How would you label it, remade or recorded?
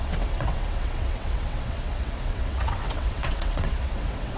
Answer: remade